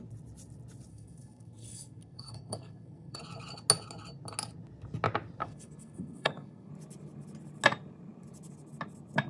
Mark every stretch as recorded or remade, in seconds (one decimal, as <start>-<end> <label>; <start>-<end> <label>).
0.0-0.9 recorded; 0.9-3.2 remade; 3.2-5.4 recorded; 5.4-6.7 remade; 6.7-9.3 recorded